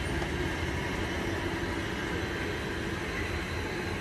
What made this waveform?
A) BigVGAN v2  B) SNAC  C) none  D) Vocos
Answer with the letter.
C